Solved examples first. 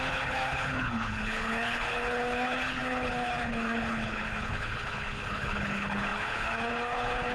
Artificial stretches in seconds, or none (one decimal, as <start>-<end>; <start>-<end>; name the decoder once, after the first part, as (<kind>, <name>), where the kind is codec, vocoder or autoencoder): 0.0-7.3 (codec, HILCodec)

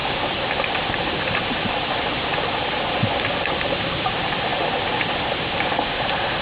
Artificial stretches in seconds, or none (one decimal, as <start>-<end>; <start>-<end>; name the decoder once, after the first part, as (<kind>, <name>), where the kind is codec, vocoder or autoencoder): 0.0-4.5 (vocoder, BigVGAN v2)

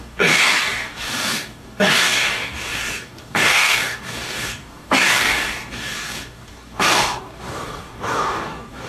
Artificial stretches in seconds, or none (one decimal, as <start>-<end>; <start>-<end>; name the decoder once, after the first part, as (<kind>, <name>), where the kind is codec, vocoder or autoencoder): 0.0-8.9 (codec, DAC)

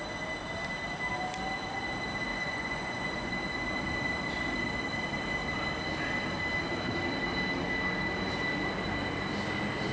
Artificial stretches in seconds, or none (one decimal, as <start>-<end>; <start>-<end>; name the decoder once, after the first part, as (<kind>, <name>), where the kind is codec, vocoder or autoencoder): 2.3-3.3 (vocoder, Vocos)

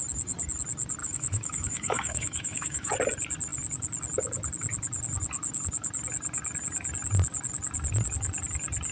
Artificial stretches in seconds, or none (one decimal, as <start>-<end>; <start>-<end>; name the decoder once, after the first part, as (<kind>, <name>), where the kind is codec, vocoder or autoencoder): 1.0-2.9 (autoencoder, DAC-VAE)